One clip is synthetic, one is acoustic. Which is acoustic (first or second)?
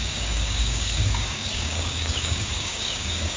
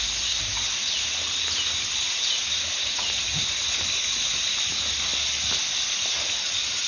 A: second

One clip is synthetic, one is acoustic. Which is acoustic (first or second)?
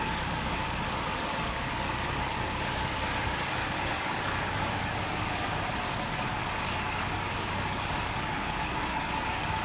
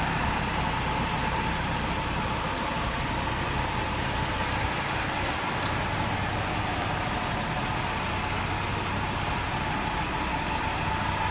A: second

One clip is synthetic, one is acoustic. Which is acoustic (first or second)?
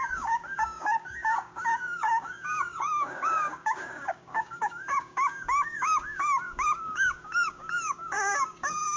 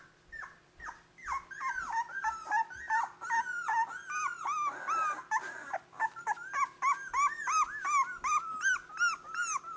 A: second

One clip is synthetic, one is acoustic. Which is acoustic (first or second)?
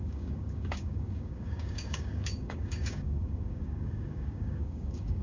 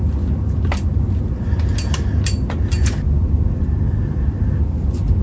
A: second